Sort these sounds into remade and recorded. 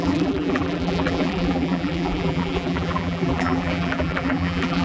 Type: remade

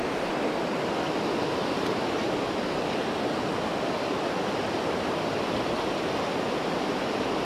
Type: recorded